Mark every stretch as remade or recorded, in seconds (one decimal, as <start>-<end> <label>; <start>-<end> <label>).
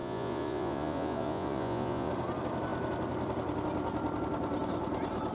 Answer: 0.0-2.1 remade; 2.1-5.3 recorded